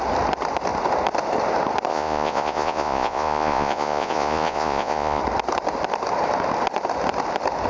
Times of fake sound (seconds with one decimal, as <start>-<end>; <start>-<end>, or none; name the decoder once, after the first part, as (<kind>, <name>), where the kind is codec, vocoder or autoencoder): 1.9-5.2 (vocoder, Vocos)